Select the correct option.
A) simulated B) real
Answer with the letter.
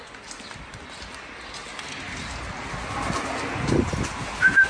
B